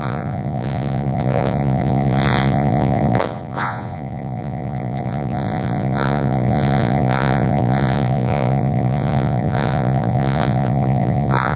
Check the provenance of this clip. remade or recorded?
remade